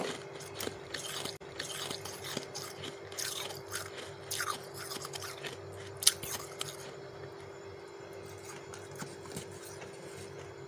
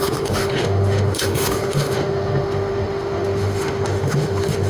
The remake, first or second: second